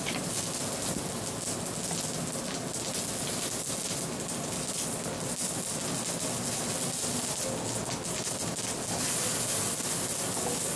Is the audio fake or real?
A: real